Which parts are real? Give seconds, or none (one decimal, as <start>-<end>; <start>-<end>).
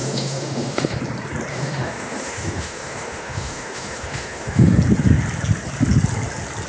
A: 1.0-1.5; 4.8-6.7